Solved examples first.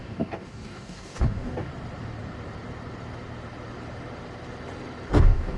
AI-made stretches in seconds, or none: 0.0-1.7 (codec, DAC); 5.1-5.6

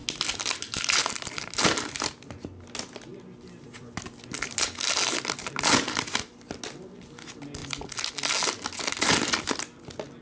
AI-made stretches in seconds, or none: none

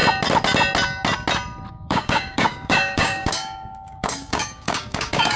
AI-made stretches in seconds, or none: 1.7-5.4 (codec, DAC)

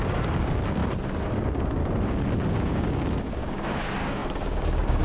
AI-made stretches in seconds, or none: 0.0-0.8 (codec, DAC); 1.4-1.8; 2.5-5.0